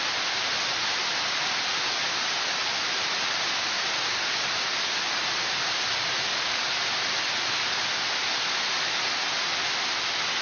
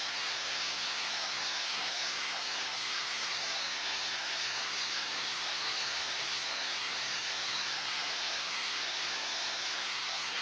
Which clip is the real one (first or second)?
first